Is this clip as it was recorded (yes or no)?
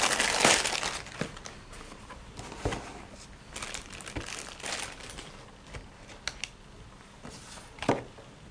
yes